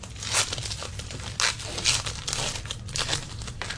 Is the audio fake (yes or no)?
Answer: no